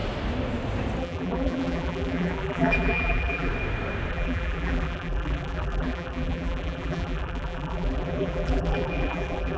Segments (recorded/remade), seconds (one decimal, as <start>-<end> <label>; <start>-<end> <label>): 0.0-1.0 recorded; 1.0-3.5 remade; 3.5-4.1 recorded; 4.1-9.6 remade